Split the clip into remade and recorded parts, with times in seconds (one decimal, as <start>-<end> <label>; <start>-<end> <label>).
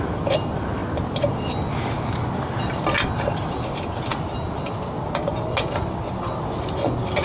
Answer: 0.0-7.2 recorded